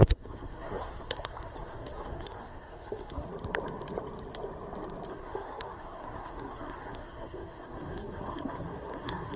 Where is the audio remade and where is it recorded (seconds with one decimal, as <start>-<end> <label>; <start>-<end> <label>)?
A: 0.0-3.3 remade; 3.3-5.1 recorded; 5.1-9.4 remade